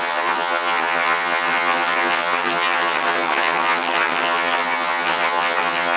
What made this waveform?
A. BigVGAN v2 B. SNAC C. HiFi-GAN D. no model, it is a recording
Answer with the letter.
C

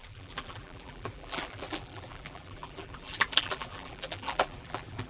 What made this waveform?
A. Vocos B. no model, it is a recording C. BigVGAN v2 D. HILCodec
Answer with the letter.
C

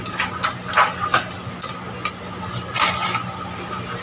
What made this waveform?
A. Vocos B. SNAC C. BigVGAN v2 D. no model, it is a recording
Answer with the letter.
D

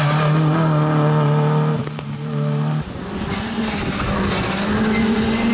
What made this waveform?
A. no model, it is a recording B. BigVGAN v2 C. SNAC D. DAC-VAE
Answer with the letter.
A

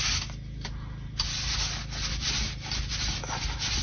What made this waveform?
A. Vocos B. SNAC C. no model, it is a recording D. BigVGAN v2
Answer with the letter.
C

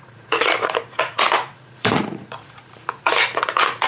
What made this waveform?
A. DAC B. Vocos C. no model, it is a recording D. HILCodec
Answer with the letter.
B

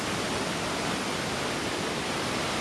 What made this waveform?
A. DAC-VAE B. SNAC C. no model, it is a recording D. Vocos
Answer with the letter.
C